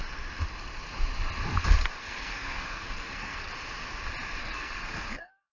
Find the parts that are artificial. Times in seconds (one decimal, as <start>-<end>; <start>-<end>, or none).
2.0-3.5; 4.4-5.5